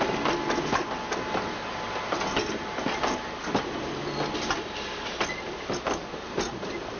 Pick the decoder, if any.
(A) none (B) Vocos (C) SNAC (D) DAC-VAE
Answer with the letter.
A